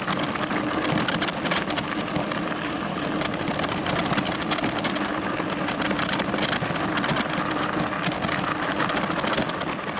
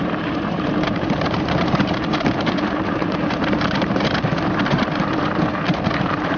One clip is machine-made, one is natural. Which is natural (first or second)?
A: first